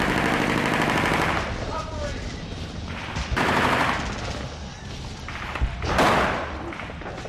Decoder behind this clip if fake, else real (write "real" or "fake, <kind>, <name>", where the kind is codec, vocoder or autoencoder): real